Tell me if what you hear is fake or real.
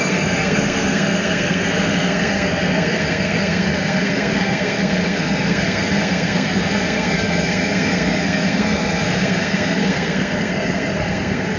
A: fake